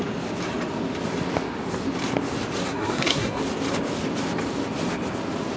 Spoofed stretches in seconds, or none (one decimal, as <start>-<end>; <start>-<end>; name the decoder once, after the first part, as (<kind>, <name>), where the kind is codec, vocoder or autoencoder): 2.6-3.4 (codec, SNAC)